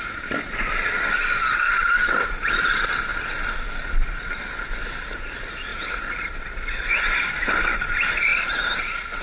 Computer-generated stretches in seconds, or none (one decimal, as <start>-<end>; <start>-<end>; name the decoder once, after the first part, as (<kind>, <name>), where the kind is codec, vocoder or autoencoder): 5.7-7.0 (vocoder, BigVGAN v2); 8.3-9.2